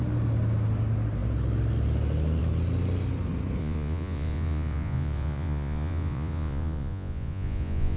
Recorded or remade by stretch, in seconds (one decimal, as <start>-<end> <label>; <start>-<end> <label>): 0.0-3.6 recorded; 3.6-8.0 remade